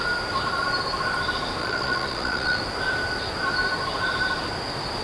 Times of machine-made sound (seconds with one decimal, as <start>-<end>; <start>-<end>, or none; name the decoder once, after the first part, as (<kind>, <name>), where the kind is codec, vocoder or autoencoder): 1.6-2.6 (vocoder, Vocos)